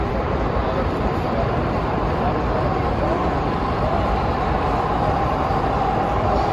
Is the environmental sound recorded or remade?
remade